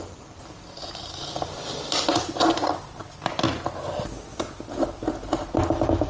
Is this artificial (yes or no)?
no